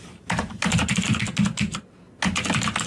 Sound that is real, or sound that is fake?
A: real